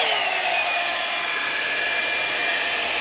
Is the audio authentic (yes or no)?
yes